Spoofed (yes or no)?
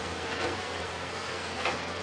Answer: yes